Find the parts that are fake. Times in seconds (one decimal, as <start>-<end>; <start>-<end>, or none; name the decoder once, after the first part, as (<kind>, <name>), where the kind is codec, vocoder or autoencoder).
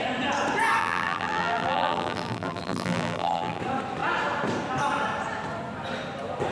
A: 0.8-3.6 (vocoder, BigVGAN v2)